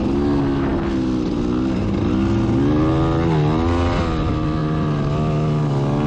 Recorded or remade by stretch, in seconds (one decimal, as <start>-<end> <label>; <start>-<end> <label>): 0.0-6.1 recorded